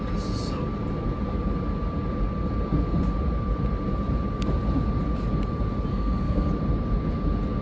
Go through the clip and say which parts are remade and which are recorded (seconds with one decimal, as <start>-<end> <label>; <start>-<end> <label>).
0.0-5.9 recorded; 5.9-6.5 remade; 6.5-7.6 recorded